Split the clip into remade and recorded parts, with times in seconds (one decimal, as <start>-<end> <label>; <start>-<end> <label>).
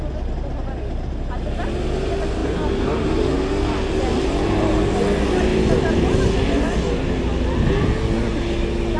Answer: 0.0-9.0 recorded